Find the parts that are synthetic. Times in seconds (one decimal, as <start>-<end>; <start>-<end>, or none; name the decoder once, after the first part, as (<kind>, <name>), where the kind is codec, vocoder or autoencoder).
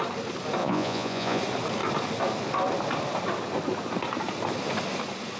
0.6-1.4 (vocoder, Vocos)